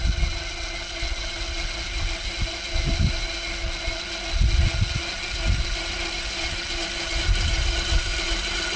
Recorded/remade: recorded